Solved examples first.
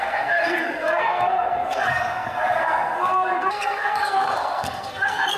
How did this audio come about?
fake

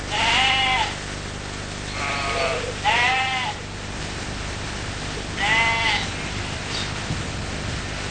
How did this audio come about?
real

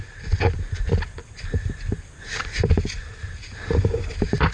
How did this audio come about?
real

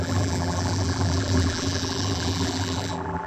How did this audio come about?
fake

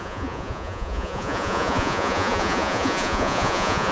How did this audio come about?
fake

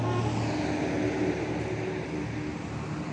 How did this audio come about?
real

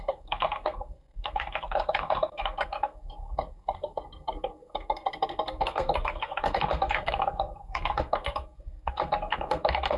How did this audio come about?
fake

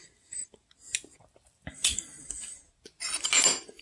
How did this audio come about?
real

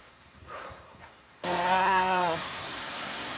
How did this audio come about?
fake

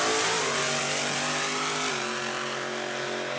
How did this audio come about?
real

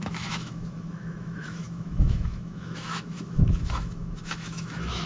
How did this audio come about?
fake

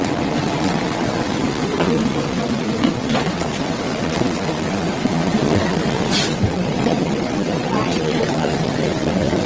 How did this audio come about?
fake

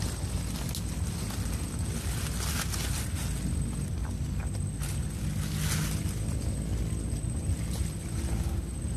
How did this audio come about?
real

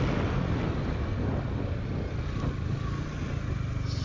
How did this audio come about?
real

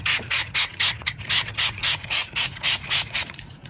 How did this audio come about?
fake